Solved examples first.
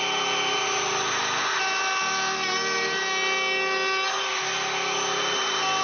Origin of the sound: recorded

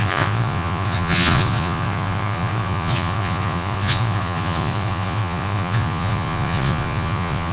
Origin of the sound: remade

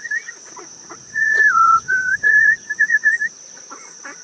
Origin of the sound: remade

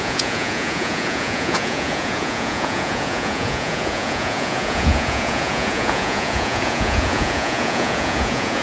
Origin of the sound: remade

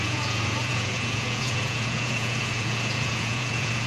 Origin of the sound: remade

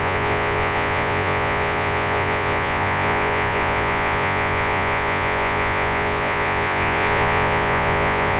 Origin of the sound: remade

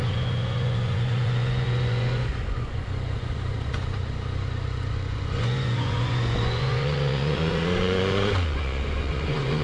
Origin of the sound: remade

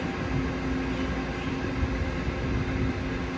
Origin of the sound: recorded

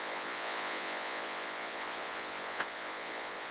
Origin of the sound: remade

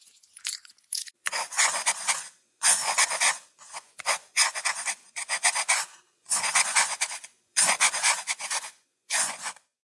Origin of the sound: remade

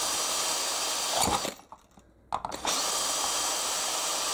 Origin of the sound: recorded